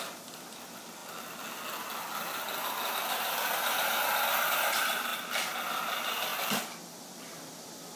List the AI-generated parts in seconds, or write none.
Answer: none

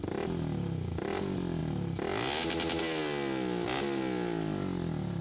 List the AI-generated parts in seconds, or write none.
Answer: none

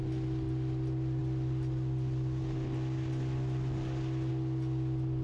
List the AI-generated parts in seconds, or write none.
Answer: none

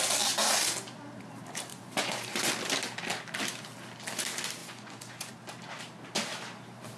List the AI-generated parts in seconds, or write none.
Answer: 1.7-2.5; 4.6-5.3

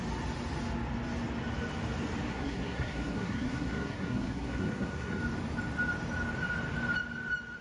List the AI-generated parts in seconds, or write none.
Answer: 2.3-5.2